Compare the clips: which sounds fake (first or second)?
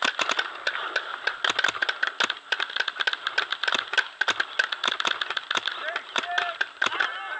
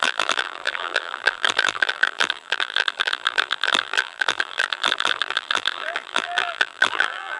second